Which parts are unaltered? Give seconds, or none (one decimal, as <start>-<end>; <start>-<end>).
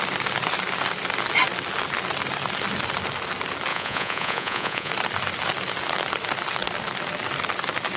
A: 0.0-3.7; 4.9-8.0